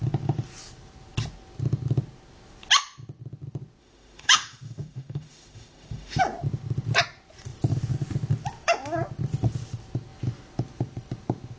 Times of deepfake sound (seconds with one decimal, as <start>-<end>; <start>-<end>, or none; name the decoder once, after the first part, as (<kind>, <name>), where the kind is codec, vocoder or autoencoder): 3.8-6.2 (autoencoder, DAC-VAE)